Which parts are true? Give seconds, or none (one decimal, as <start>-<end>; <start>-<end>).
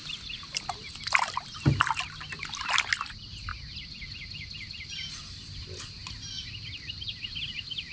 0.0-7.9